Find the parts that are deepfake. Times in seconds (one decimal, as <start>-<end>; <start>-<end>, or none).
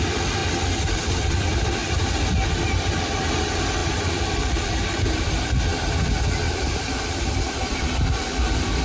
0.0-0.4; 1.3-1.8; 2.8-8.8